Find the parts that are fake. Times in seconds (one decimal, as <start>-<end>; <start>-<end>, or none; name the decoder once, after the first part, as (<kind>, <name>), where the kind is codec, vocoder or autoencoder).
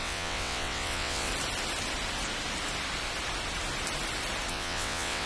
0.0-1.3 (vocoder, WaveNeXt); 4.5-5.3